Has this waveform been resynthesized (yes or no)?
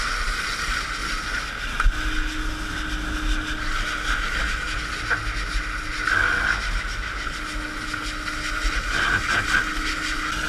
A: no